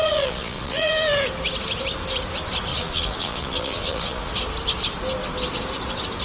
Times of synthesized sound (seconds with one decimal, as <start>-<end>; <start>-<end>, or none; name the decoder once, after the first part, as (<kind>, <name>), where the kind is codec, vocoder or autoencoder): 0.0-0.9 (vocoder, Vocos); 2.7-4.3